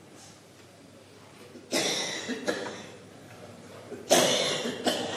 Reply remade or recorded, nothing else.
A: recorded